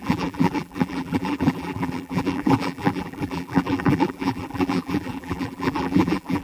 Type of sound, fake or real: fake